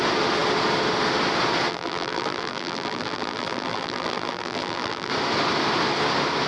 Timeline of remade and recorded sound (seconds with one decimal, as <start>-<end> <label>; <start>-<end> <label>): 0.0-1.7 recorded; 1.7-5.1 remade; 5.1-6.5 recorded